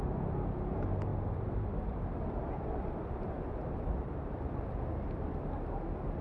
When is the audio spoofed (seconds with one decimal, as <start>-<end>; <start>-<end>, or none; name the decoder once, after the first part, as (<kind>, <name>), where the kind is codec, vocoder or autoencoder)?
1.1-4.5 (vocoder, BigVGAN v2)